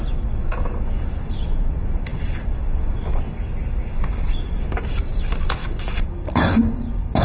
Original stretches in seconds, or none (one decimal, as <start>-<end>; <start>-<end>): 0.0-7.2